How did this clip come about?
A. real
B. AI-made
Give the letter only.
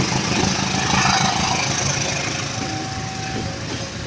A